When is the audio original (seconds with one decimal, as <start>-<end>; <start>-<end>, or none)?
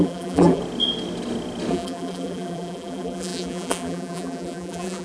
0.6-1.7